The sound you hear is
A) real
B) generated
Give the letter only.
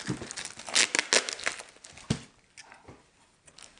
A